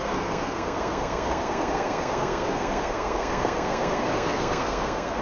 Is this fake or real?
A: fake